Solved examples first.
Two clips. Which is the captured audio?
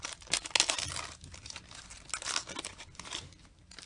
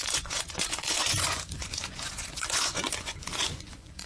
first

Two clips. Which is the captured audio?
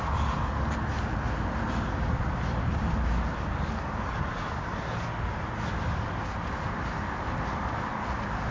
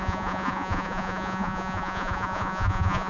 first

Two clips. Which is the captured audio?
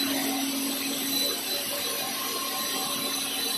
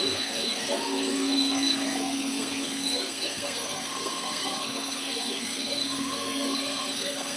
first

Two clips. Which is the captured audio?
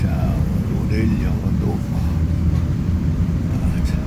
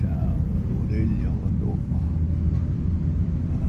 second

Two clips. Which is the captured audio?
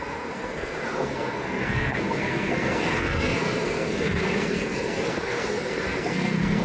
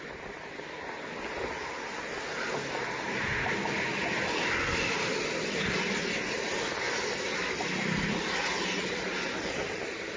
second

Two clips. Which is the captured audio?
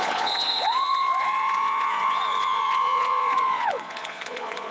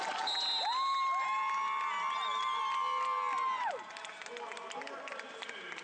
second